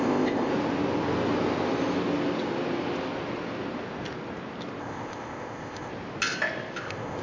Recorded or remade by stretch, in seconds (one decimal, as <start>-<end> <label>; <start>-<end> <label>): 0.0-0.5 remade; 0.5-4.8 recorded; 4.8-5.9 remade; 5.9-6.8 recorded; 6.8-7.2 remade